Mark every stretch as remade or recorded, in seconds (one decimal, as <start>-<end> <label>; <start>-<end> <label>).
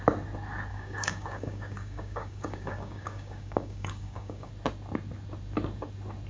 0.0-0.7 recorded; 0.7-4.5 remade; 4.5-6.3 recorded